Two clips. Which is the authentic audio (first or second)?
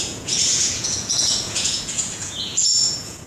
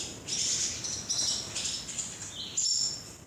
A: second